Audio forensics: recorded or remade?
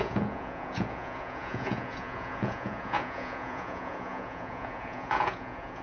remade